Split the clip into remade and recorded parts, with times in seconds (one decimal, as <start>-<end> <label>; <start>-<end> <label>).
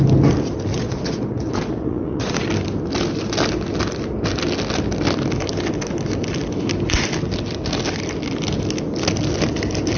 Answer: 0.0-0.7 recorded; 0.7-2.4 remade; 2.4-10.0 recorded